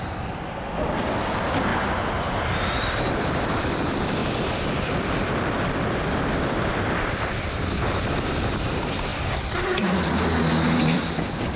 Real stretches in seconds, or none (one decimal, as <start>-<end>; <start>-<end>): 1.7-3.2

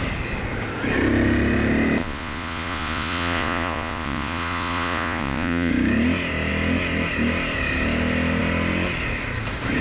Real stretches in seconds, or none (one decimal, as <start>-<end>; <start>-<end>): 0.0-2.0; 5.7-9.8

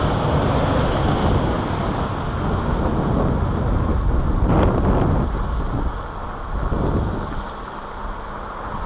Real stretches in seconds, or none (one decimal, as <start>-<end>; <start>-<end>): 0.0-8.9

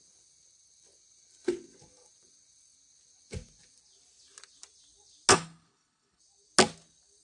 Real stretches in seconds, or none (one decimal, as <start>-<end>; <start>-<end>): 0.0-5.3; 6.2-7.2

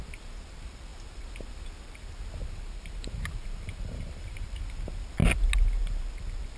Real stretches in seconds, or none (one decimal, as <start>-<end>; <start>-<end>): 0.0-2.4; 4.6-6.6

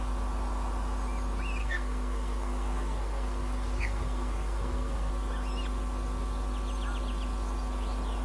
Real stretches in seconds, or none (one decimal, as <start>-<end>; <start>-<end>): 0.0-1.6; 5.1-8.2

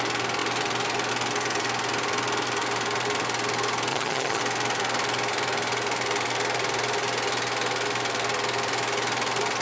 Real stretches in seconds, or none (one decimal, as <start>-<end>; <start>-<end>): 0.0-3.9; 4.4-9.6

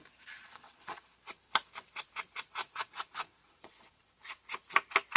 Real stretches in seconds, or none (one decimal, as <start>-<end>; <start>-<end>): 0.0-0.4; 1.0-2.6; 4.1-5.2